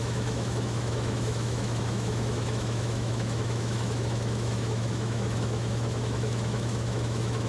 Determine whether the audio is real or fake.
fake